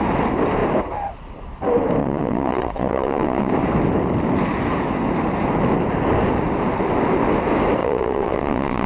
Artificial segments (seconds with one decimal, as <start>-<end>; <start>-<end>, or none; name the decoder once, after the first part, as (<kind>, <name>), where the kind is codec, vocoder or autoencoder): 2.0-3.5 (vocoder, WaveNeXt); 7.8-8.9